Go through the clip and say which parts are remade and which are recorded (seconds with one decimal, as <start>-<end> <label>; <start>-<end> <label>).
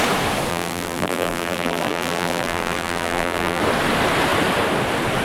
0.0-0.5 recorded; 0.5-3.6 remade; 3.6-5.2 recorded